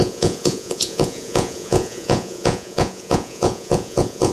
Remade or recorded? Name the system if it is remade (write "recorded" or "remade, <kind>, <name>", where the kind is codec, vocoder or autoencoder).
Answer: remade, vocoder, Vocos